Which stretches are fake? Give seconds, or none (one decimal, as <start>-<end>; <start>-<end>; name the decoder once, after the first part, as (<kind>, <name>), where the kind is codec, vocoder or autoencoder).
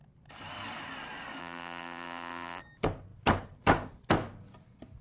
1.4-2.6 (vocoder, BigVGAN v2)